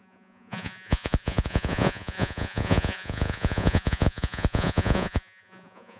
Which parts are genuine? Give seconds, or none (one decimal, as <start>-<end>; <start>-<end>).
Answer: none